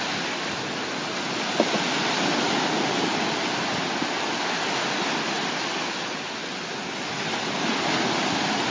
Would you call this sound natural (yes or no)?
yes